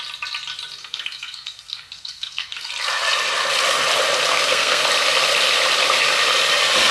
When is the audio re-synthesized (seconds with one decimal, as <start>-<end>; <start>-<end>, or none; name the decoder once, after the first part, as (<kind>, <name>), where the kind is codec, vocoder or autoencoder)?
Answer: 0.8-2.7 (codec, SNAC); 4.3-4.8